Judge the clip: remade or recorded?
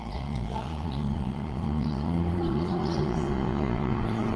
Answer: remade